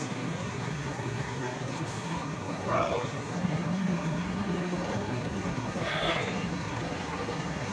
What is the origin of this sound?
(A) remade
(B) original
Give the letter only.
A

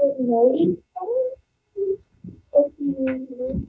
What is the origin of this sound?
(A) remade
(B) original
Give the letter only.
A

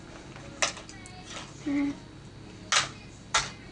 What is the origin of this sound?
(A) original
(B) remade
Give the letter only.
A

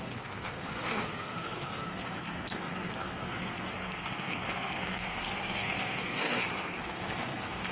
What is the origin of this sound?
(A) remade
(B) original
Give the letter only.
A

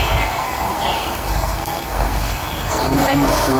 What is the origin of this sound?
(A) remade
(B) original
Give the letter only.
A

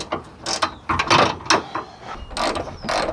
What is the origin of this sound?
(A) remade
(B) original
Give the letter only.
B